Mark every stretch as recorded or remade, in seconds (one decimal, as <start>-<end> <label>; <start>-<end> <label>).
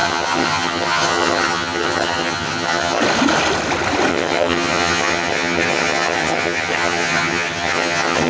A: 0.0-3.0 remade; 3.0-4.1 recorded; 4.1-8.3 remade